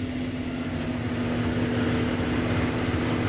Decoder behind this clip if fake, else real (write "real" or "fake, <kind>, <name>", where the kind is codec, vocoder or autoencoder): real